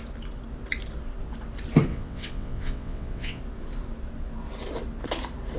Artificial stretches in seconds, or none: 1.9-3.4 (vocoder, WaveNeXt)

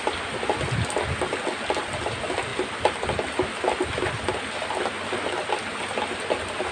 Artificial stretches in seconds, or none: none

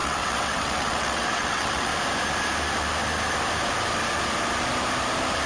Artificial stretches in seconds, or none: 0.0-1.9 (vocoder, WaveNeXt)

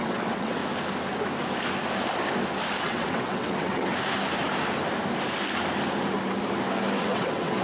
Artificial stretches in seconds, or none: 0.0-0.6 (vocoder, WaveNeXt); 2.8-3.9; 7.0-7.6

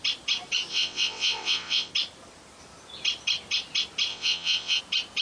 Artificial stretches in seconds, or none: 0.7-1.9 (vocoder, WaveNeXt); 4.1-4.8

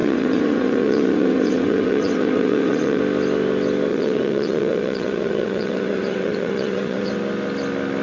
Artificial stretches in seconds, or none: 0.0-3.0 (vocoder, WaveNeXt); 3.9-7.1

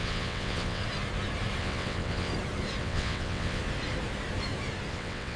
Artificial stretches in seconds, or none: 0.0-0.8 (vocoder, WaveNeXt); 1.6-2.3; 2.8-3.6; 4.9-5.4

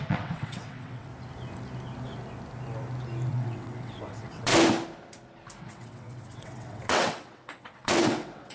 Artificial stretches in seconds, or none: 0.0-1.1 (vocoder, WaveNeXt); 3.3-4.5; 5.6-8.5